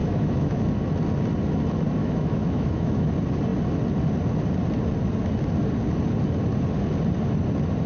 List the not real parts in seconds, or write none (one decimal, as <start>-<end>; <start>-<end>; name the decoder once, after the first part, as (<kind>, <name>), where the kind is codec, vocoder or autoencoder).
0.0-0.7 (autoencoder, DAC-VAE); 2.0-3.1